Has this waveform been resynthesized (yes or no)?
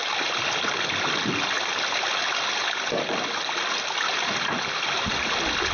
no